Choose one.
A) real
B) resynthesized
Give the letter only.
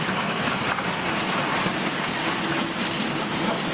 A